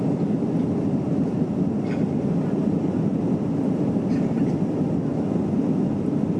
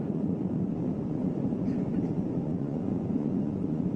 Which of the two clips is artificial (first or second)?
second